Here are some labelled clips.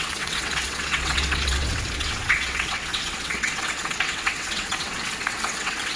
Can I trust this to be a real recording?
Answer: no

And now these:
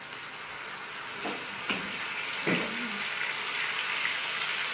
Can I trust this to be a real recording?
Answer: yes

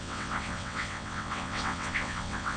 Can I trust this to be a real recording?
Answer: no